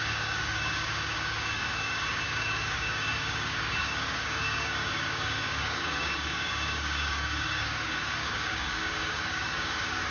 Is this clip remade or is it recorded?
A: remade